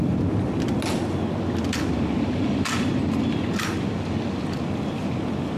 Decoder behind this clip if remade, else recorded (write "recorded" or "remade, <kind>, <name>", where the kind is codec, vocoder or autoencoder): recorded